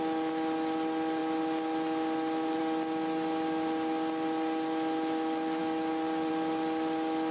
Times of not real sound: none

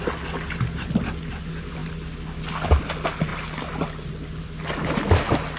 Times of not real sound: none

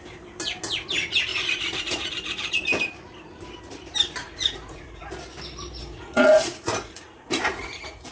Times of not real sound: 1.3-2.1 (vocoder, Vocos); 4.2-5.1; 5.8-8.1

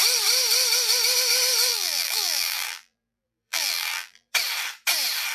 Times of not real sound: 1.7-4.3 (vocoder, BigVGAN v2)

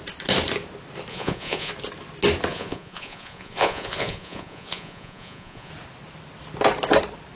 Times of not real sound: 1.1-1.7 (vocoder, Vocos); 2.5-5.7